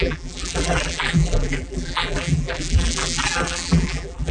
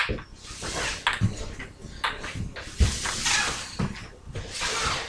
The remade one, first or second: first